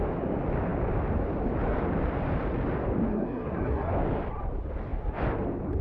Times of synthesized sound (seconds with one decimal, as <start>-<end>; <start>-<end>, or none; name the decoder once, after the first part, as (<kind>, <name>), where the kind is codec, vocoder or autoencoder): 3.1-3.9 (codec, SNAC)